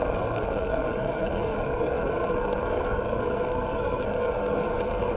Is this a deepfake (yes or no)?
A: yes